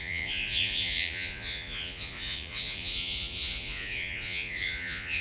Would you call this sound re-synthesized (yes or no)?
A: yes